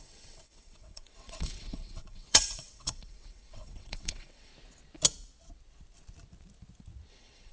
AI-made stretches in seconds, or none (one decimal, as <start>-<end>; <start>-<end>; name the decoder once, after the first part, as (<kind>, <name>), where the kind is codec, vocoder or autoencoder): 0.0-4.5 (vocoder, WaveNeXt); 7.1-7.5